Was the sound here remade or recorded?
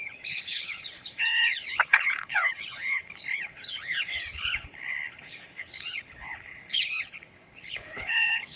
remade